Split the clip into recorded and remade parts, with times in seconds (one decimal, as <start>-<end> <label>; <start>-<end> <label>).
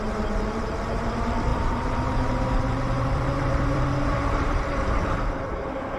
0.0-6.0 remade